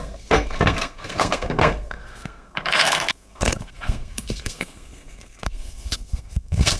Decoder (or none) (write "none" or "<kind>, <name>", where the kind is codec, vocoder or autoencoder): codec, SNAC